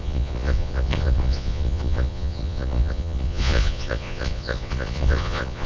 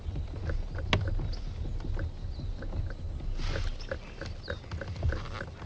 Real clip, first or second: second